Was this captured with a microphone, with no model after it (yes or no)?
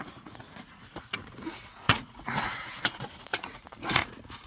no